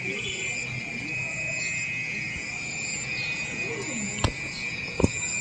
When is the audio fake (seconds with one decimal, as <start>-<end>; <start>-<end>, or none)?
none